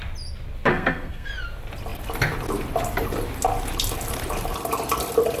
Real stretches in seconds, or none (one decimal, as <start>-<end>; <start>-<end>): 0.0-0.7; 1.3-5.4